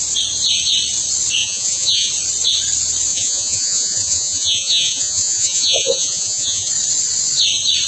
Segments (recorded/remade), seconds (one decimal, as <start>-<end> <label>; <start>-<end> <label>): 0.0-1.4 recorded; 1.4-2.1 remade; 2.1-3.1 recorded; 3.1-6.7 remade; 6.7-7.9 recorded